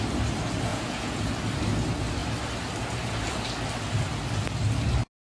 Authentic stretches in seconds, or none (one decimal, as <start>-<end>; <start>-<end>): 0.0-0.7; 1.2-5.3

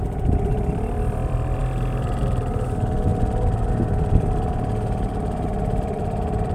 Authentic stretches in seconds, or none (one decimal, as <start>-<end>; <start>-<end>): 3.1-3.7; 4.7-5.5

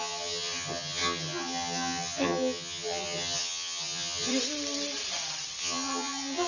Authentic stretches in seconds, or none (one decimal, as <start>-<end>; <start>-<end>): 4.3-5.6

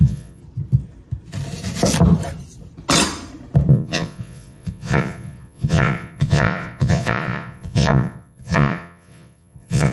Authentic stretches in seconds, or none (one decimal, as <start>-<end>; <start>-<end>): 0.4-3.7

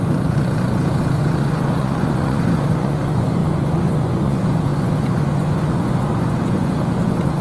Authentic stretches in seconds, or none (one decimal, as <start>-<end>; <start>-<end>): none